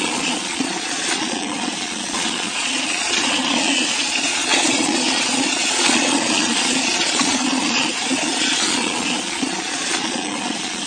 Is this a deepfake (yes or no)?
yes